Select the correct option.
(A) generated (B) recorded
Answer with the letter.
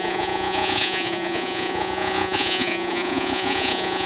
A